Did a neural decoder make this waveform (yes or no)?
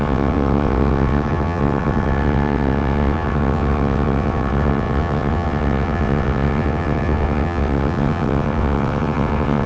yes